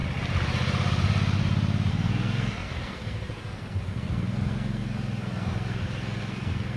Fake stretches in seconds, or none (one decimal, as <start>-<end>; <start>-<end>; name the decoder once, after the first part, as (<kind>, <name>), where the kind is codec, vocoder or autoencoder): 1.9-6.8 (codec, SNAC)